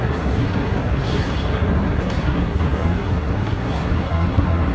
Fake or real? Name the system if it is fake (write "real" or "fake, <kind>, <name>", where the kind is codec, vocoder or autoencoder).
fake, codec, SNAC